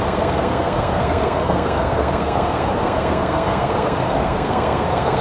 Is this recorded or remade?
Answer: remade